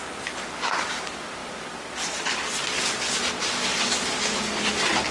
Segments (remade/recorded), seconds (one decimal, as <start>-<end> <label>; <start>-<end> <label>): 0.0-5.1 recorded